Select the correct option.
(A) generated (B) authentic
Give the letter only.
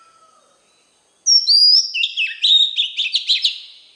B